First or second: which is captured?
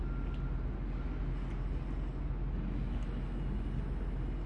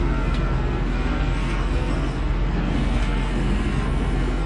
first